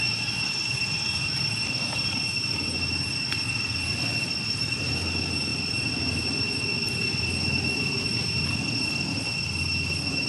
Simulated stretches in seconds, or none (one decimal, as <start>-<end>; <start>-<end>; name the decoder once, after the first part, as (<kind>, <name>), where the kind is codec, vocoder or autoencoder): none